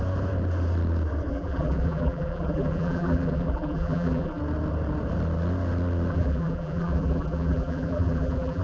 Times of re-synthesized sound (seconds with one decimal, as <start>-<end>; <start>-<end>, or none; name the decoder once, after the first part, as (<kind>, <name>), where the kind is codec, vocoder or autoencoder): 1.3-4.4 (vocoder, BigVGAN v2); 6.1-8.6